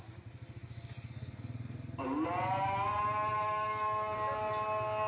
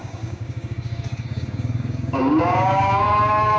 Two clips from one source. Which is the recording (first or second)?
first